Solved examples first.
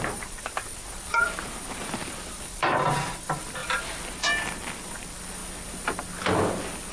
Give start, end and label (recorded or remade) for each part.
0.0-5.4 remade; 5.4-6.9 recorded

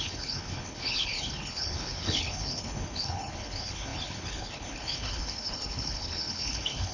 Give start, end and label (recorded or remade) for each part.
0.0-6.9 remade